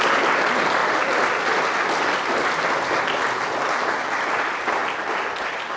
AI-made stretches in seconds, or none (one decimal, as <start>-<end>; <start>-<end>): 0.0-0.8; 4.3-4.8